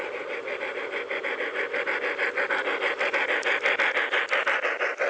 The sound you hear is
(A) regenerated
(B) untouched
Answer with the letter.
B